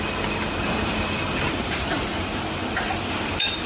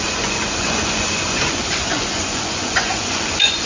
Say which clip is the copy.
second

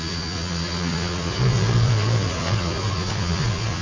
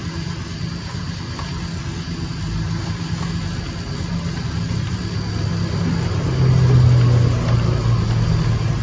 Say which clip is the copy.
first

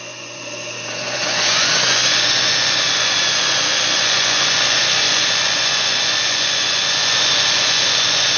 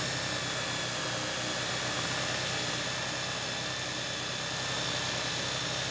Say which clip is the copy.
first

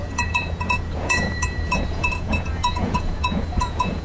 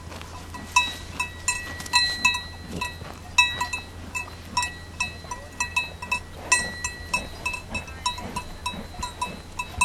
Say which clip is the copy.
first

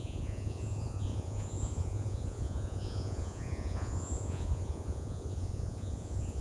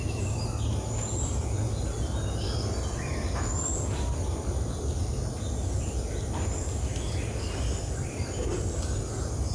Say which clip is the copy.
first